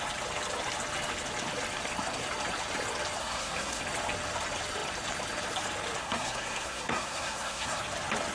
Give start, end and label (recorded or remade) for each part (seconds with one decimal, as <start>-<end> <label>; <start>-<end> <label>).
0.0-3.2 recorded; 3.2-3.8 remade; 3.8-6.0 recorded; 6.0-7.8 remade; 7.8-8.3 recorded